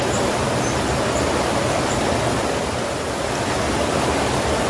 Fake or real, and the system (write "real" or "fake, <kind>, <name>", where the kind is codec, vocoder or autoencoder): real